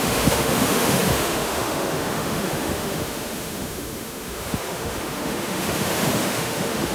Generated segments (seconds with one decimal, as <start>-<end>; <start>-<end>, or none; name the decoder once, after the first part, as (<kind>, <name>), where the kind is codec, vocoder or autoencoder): 0.0-6.9 (autoencoder, DAC-VAE)